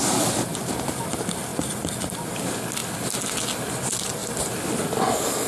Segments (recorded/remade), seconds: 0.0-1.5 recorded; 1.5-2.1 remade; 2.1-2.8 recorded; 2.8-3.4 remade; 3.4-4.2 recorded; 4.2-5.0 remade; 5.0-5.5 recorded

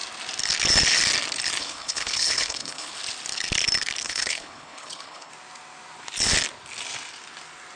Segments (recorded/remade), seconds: 0.0-1.6 recorded; 1.6-3.0 remade; 3.0-4.0 recorded; 4.0-5.3 remade; 5.3-7.8 recorded

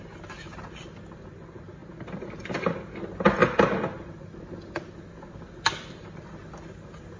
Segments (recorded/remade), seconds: 0.0-7.2 recorded

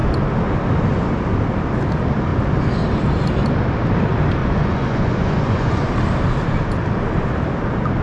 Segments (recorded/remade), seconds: 0.0-4.4 recorded; 4.4-5.9 remade; 5.9-8.0 recorded

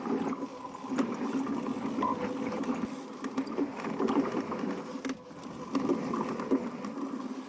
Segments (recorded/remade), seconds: 0.0-7.5 recorded

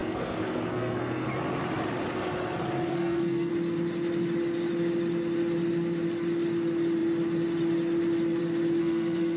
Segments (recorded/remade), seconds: 0.0-1.3 remade; 1.3-2.9 recorded; 2.9-3.5 remade; 3.5-8.8 recorded; 8.8-9.4 remade

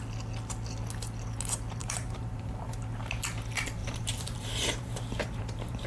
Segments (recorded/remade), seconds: 0.0-1.8 recorded; 1.8-2.7 remade; 2.7-3.8 recorded; 3.8-5.9 remade